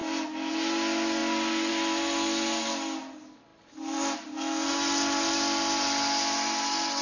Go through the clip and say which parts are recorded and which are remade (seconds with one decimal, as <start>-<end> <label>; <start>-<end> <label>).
0.0-7.0 recorded